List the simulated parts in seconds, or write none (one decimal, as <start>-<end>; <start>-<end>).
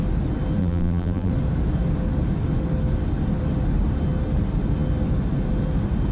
0.6-1.3